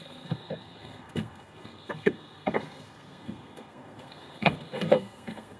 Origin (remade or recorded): remade